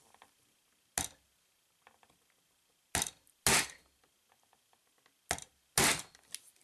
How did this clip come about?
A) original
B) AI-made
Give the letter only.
A